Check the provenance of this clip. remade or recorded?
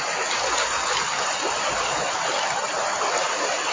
recorded